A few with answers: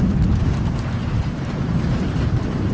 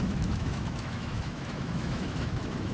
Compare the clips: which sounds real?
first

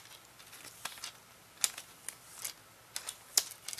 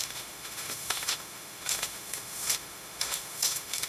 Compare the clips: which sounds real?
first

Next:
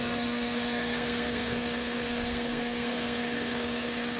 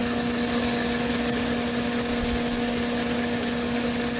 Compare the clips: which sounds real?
second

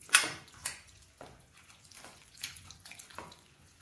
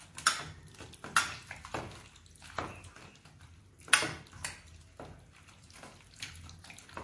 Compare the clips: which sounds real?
second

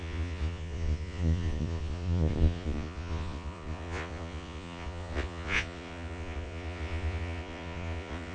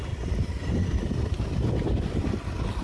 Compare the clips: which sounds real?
second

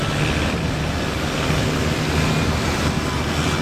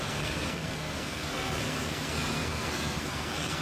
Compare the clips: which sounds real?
first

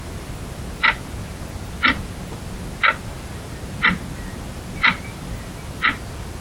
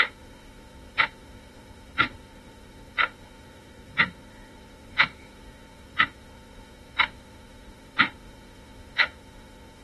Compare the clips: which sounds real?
first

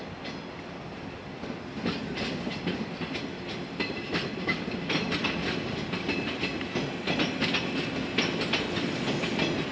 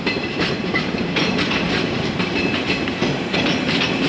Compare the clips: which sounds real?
first